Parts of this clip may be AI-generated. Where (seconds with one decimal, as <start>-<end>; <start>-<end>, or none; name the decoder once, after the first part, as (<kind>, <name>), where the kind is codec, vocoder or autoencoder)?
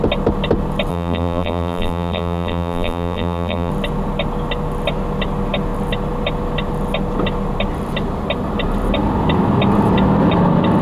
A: 0.9-3.7 (vocoder, BigVGAN v2)